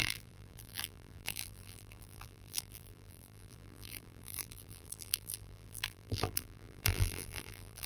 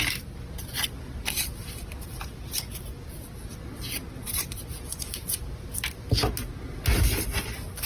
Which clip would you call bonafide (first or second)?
second